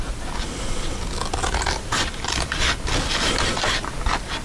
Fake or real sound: real